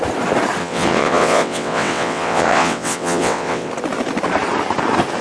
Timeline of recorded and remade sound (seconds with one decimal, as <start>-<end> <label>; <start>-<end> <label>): 0.0-0.6 recorded; 0.6-3.7 remade; 3.7-5.2 recorded